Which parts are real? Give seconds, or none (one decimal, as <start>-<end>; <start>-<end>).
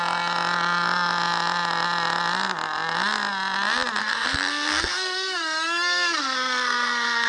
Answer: 0.0-4.0